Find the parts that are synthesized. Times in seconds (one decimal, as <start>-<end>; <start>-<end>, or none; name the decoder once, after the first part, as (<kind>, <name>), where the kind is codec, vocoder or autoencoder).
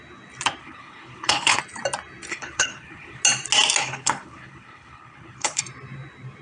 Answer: 0.6-1.6 (codec, HILCodec); 2.3-3.2; 3.8-5.6